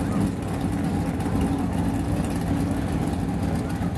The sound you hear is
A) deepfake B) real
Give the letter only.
B